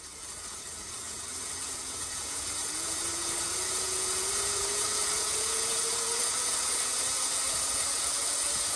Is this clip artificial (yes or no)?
yes